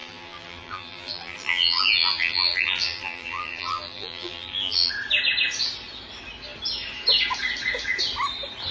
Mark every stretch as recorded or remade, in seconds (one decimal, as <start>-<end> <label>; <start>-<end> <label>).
0.0-4.9 remade; 4.9-8.7 recorded

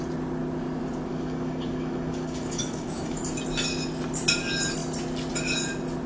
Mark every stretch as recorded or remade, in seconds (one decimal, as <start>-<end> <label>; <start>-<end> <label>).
0.0-1.1 recorded; 1.1-3.2 remade; 3.2-6.1 recorded

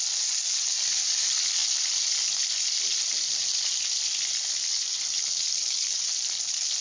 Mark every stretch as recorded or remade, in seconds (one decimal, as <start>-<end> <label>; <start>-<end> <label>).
0.0-6.8 recorded

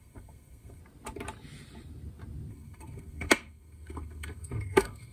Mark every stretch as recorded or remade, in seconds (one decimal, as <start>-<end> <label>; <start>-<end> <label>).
0.0-0.8 remade; 0.8-2.5 recorded; 2.5-5.1 remade

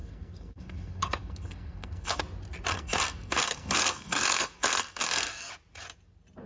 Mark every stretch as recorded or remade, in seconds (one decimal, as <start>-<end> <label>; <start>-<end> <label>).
0.0-2.2 remade; 2.2-2.7 recorded; 2.7-5.5 remade; 5.5-6.5 recorded

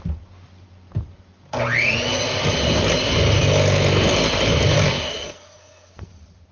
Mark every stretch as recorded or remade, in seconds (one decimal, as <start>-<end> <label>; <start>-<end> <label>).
0.0-5.1 recorded; 5.1-6.1 remade; 6.1-6.5 recorded